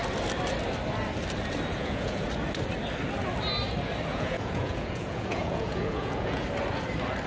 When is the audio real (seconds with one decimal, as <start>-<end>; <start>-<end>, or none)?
0.0-1.7; 2.3-4.1; 6.4-7.3

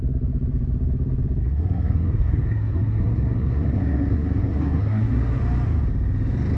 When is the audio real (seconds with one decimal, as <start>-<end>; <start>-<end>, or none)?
0.0-1.4; 5.4-6.6

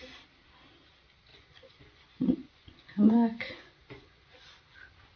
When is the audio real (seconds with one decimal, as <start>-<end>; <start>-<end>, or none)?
0.0-1.3; 4.4-5.2

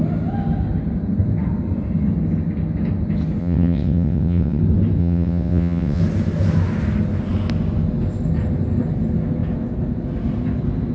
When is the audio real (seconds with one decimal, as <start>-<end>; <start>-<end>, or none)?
0.0-3.4; 4.6-5.0; 6.0-10.9

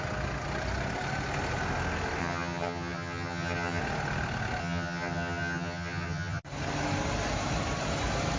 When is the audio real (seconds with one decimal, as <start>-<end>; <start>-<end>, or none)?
0.0-2.2; 3.8-4.6; 6.4-8.4